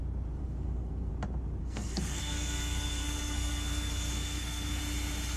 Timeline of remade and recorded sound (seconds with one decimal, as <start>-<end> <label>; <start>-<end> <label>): 0.0-0.4 recorded; 0.4-1.1 remade; 1.1-1.6 recorded; 1.6-4.8 remade; 4.8-5.4 recorded